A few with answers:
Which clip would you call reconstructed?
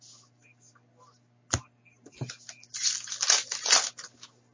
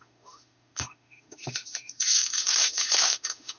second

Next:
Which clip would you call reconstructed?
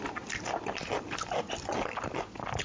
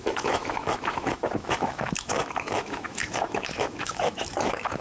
second